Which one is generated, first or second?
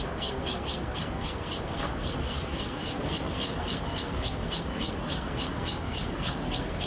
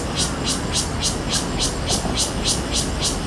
first